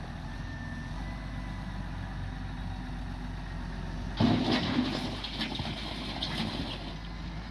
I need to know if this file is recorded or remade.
recorded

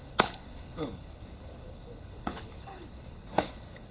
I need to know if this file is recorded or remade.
remade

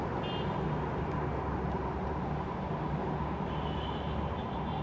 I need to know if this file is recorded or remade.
recorded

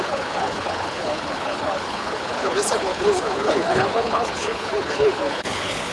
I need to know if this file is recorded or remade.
remade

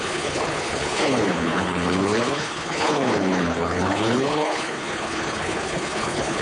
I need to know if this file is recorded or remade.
remade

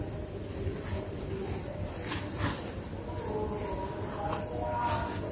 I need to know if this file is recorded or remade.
recorded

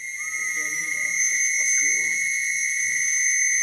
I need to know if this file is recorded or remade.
recorded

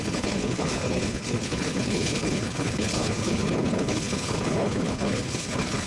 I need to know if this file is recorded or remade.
remade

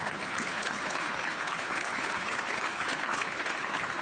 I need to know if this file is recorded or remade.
remade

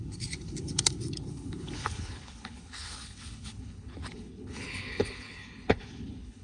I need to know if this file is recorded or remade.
remade